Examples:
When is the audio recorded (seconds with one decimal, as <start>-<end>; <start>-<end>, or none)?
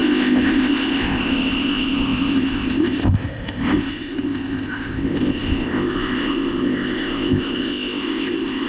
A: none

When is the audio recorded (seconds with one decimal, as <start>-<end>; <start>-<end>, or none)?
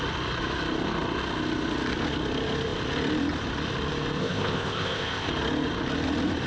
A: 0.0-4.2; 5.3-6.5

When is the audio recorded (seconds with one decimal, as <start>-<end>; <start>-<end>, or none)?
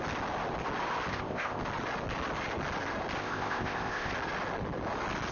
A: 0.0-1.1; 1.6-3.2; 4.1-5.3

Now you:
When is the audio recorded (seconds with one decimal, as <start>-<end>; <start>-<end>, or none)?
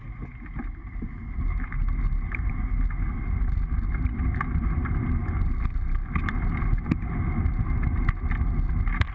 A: 0.0-9.1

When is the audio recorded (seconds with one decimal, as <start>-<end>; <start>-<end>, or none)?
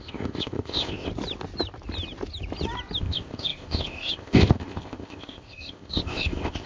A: 1.1-3.0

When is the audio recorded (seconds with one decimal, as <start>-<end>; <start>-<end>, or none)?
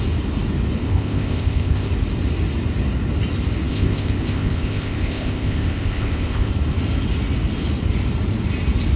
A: 0.0-0.8; 1.9-3.7; 6.5-9.0